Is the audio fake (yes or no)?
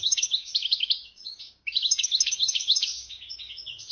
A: yes